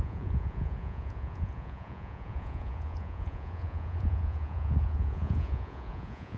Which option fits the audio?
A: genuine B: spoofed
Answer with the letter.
B